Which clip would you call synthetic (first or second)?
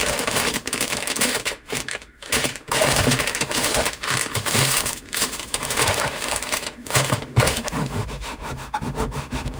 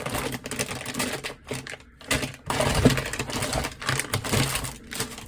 first